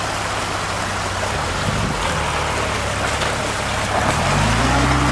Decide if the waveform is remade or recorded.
recorded